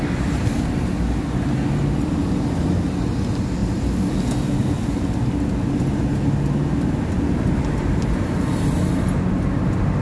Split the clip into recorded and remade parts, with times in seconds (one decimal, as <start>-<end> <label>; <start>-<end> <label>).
0.0-10.0 recorded